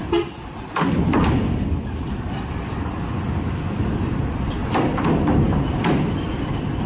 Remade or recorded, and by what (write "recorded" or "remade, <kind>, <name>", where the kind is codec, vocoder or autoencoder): recorded